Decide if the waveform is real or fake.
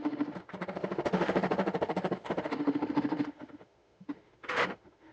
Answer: fake